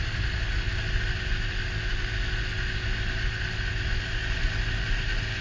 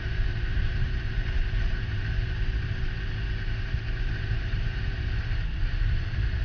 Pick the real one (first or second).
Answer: first